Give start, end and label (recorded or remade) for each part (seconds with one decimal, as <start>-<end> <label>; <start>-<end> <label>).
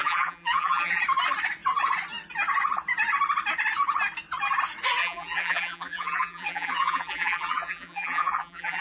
0.0-1.0 remade; 1.0-5.0 recorded; 5.0-8.8 remade